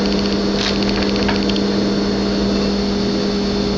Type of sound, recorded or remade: recorded